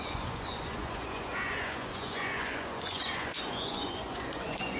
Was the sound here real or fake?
fake